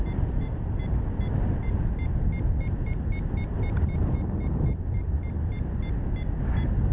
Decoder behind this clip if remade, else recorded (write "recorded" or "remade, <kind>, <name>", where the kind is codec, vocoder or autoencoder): recorded